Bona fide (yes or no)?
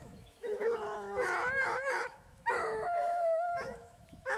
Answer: no